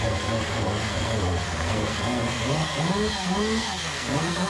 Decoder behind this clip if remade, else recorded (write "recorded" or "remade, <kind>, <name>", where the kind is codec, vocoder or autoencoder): remade, codec, SNAC